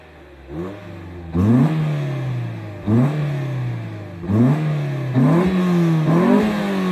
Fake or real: real